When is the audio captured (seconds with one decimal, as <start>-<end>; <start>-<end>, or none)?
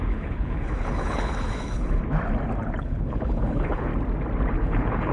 2.0-2.8; 3.9-4.5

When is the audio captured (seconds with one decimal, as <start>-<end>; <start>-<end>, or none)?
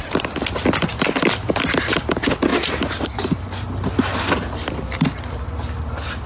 0.0-6.3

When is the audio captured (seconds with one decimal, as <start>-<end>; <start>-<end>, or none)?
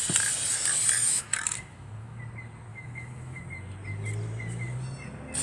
0.0-1.0; 2.2-2.7; 3.4-5.4